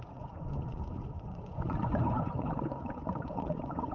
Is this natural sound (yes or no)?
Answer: no